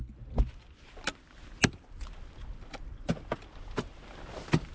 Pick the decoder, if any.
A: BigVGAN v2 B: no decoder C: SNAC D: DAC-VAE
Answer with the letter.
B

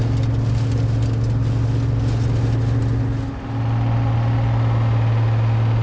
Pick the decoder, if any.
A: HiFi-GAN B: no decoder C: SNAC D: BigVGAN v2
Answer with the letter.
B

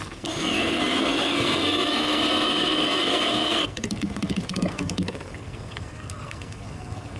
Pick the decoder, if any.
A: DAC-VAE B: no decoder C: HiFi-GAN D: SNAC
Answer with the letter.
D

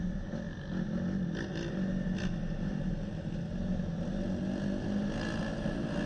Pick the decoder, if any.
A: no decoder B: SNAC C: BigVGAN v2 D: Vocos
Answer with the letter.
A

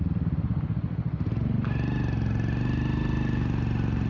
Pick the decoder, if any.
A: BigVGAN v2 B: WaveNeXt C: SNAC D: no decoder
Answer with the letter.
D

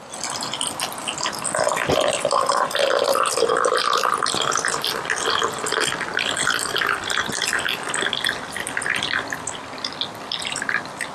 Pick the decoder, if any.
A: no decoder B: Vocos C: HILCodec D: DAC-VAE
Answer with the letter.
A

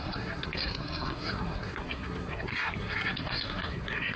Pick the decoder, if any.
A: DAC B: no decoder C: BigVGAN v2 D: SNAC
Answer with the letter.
D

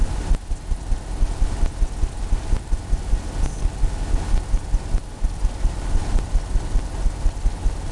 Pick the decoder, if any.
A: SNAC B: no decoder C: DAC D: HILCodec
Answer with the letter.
B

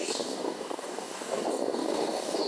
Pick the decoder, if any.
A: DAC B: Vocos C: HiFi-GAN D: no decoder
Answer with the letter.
A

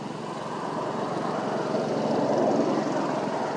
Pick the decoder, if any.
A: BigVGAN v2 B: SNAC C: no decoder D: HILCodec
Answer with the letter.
C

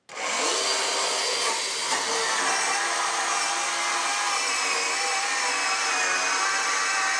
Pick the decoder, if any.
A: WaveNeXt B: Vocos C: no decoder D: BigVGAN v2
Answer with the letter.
C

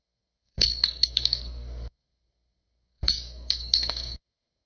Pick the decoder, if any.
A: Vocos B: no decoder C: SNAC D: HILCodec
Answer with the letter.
C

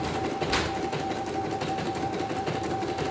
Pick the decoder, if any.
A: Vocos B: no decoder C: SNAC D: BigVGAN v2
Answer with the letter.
B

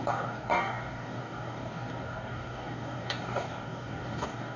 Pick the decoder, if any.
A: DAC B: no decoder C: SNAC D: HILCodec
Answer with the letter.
A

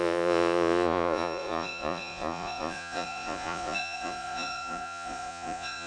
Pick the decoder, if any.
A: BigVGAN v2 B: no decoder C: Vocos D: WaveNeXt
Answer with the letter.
C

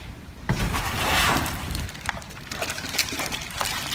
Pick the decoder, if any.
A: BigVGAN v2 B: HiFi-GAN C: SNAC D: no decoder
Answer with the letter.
A